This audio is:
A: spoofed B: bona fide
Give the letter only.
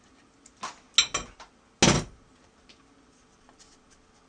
B